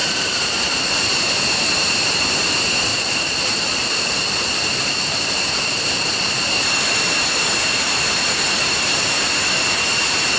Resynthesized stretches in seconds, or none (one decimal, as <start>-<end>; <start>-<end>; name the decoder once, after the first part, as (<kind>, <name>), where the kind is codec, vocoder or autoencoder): 0.0-0.9 (vocoder, BigVGAN v2); 2.9-6.5